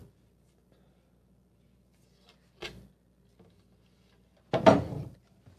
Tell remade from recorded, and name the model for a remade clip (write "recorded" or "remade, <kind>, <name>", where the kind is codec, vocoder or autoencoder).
recorded